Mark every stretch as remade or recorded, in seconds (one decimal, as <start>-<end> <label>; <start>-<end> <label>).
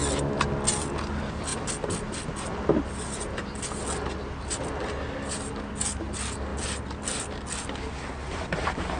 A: 0.0-9.0 recorded